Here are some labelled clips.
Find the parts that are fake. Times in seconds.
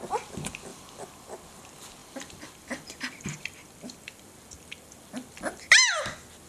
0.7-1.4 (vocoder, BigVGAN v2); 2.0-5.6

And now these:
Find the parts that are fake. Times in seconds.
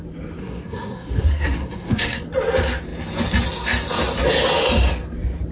0.4-2.2 (codec, SNAC)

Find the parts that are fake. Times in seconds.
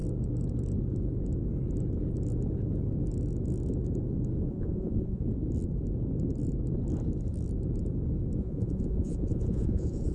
4.5-5.2 (vocoder, Vocos); 8.4-10.1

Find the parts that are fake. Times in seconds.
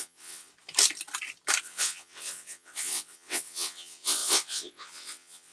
0.0-0.5 (vocoder, WaveNeXt); 1.6-5.5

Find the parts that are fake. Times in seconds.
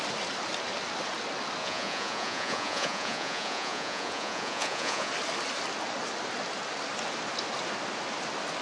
1.6-5.1 (vocoder, Vocos)